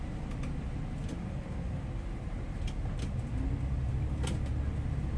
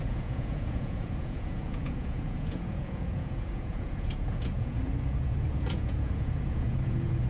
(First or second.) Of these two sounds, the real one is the first